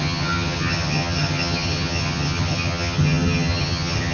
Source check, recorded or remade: remade